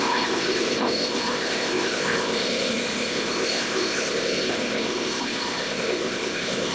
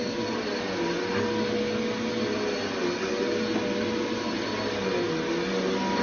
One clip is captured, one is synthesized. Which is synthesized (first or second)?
first